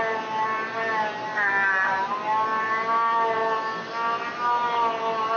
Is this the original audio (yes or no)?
yes